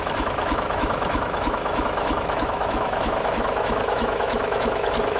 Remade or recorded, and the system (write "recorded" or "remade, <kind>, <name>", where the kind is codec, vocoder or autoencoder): remade, autoencoder, DAC-VAE